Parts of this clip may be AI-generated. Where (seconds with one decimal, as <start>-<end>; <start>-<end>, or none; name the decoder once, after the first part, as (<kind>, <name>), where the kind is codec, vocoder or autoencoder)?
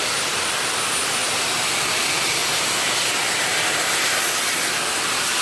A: none